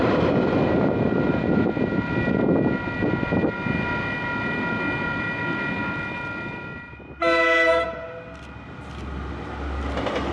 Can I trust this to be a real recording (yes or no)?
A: yes